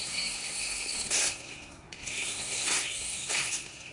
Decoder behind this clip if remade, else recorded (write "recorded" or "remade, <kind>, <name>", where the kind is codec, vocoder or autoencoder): remade, codec, SNAC